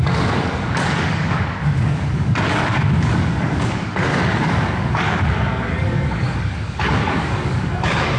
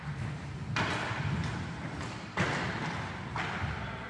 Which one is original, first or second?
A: second